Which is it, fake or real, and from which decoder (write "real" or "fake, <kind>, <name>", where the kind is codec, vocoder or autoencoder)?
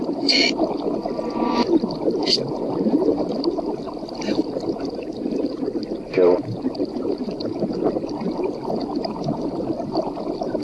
real